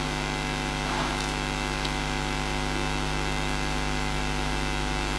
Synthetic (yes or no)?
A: yes